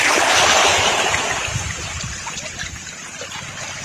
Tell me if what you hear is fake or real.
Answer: real